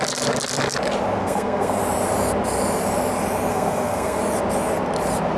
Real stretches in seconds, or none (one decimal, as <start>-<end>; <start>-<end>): 0.0-1.2; 1.8-3.5; 4.2-5.4

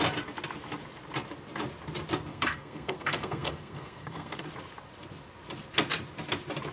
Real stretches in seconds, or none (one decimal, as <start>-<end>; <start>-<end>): 0.0-2.3; 4.4-6.7

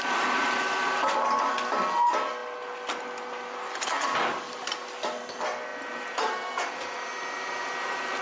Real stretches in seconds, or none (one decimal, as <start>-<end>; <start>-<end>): 0.0-8.2

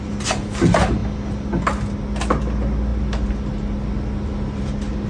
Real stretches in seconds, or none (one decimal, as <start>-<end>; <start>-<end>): 0.0-5.1

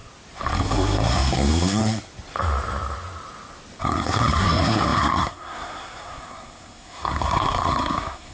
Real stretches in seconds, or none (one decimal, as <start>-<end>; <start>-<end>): 0.0-0.6; 1.8-3.8

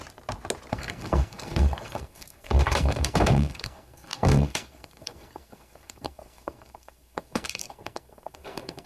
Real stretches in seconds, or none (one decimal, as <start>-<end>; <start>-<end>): 0.0-0.7

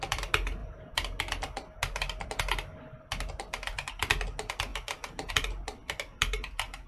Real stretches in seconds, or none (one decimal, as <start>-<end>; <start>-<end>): 0.0-6.9

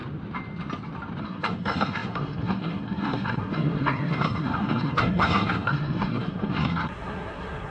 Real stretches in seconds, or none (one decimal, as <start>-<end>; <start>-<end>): 0.0-1.2